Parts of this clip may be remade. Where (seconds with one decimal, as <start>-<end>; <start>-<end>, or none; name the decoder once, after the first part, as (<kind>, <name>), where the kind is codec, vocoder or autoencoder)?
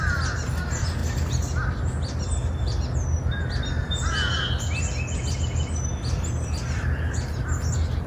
none